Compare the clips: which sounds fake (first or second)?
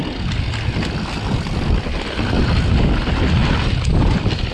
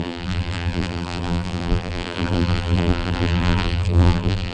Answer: second